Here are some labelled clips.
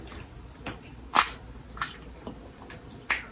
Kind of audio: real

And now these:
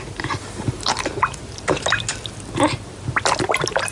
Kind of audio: real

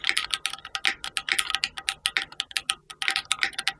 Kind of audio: real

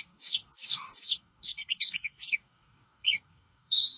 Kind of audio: fake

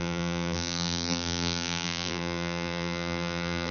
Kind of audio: fake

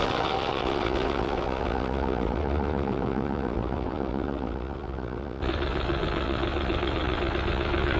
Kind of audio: fake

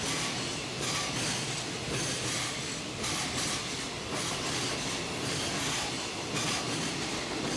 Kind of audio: real